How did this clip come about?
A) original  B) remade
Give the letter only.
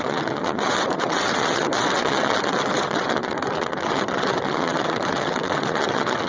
B